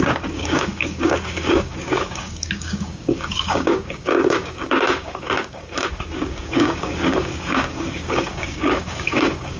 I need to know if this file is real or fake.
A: fake